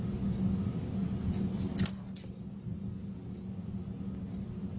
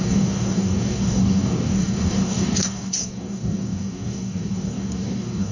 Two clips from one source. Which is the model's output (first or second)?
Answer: second